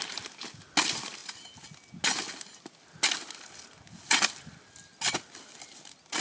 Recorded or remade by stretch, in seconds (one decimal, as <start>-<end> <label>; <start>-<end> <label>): 0.0-6.2 recorded